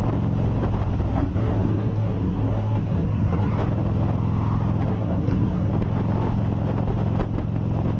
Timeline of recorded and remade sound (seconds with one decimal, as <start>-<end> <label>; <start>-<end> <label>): 0.0-1.1 recorded; 1.1-3.5 remade; 3.5-4.9 recorded; 4.9-5.7 remade; 5.7-8.0 recorded